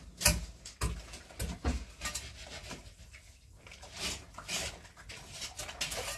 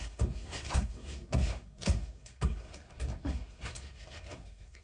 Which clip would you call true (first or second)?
first